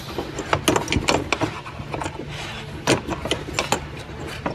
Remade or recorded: recorded